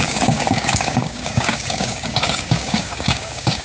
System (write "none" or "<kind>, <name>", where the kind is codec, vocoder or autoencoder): codec, DAC